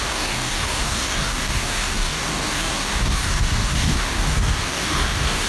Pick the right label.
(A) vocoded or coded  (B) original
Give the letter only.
A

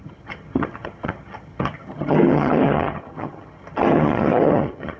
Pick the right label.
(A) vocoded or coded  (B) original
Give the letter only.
A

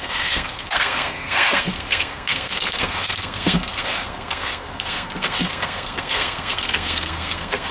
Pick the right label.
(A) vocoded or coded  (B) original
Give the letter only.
A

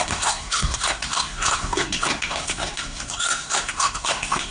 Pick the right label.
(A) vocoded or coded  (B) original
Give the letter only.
A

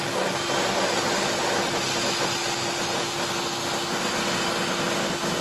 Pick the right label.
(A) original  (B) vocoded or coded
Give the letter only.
A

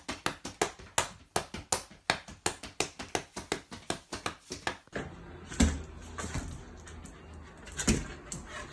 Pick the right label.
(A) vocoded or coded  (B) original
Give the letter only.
B